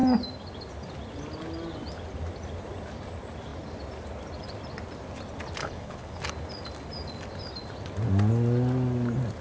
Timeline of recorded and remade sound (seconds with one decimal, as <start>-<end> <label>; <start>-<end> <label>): 0.0-5.6 recorded; 5.6-6.2 remade; 6.2-9.4 recorded